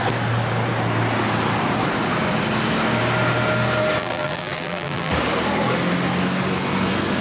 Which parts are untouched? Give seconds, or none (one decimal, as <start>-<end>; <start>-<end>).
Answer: 0.0-4.0; 5.1-7.2